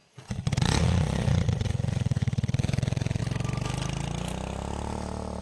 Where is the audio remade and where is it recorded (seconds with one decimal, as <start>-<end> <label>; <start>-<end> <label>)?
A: 0.0-3.2 remade; 3.2-5.4 recorded